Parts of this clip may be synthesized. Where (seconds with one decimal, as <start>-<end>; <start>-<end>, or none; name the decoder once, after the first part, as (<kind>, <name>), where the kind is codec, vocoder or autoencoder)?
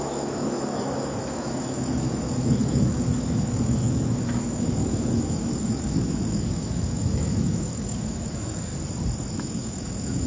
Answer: 0.0-8.7 (autoencoder, DAC-VAE); 9.4-10.3